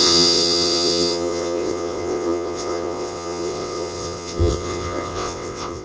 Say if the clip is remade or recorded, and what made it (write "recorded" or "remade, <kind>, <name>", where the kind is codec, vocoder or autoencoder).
remade, vocoder, WaveNeXt